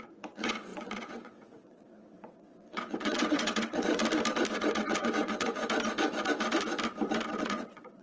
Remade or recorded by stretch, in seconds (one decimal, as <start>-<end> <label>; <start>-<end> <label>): 0.0-4.0 remade; 4.0-4.5 recorded; 4.5-5.6 remade; 5.6-7.4 recorded; 7.4-8.0 remade